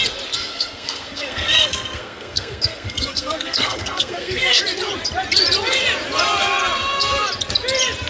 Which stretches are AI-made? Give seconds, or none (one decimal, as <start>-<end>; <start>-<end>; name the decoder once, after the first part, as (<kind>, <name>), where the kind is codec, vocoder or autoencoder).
0.4-4.6 (codec, SNAC)